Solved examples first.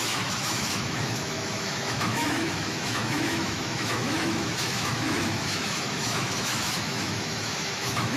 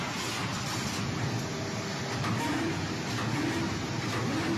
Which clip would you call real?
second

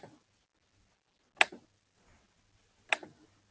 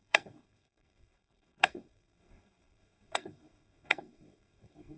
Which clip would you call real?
first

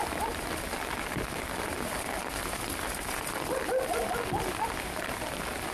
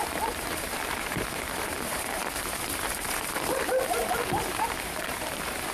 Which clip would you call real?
first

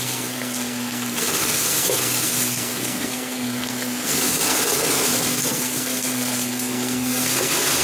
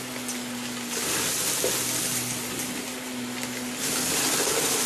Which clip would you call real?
second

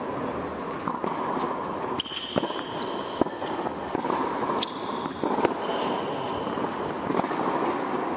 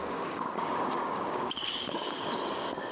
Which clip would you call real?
first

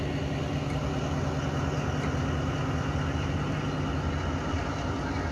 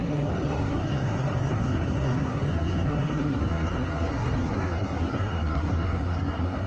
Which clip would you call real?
first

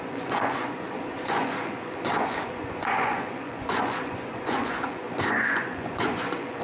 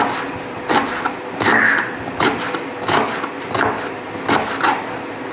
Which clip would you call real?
second